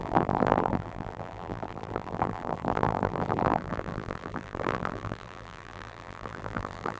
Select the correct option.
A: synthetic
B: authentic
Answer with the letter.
A